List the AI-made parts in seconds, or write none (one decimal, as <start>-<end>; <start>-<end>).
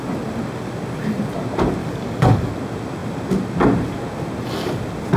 1.8-2.5